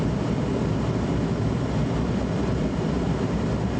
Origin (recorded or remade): recorded